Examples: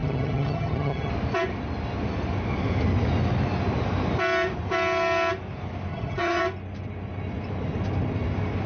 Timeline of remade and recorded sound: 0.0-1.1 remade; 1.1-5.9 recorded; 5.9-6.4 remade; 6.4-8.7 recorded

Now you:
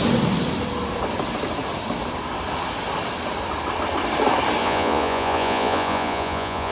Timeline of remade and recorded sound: 0.0-4.6 recorded; 4.6-6.7 remade

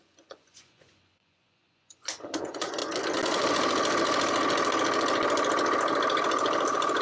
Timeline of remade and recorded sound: 0.0-2.8 remade; 2.8-7.0 recorded